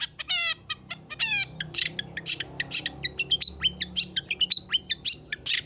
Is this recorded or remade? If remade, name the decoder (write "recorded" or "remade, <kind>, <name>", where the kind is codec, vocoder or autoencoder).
recorded